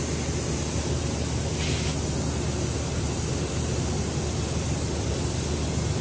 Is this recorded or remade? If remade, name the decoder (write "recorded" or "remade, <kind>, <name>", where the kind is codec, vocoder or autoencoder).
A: recorded